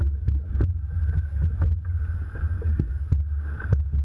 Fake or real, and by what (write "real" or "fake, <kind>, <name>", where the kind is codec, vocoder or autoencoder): real